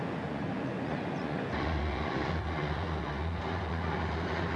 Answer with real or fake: fake